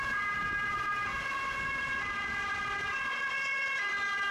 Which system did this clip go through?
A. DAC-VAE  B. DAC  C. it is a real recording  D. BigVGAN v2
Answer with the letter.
C